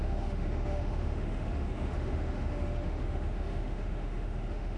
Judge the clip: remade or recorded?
remade